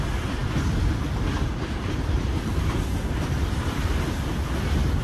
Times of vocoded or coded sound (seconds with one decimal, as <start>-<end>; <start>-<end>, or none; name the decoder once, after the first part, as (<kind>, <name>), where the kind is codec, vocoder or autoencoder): none